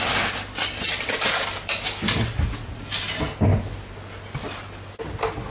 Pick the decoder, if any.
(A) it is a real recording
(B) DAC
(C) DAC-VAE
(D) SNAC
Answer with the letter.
A